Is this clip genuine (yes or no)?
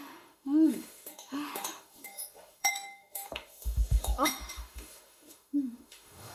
no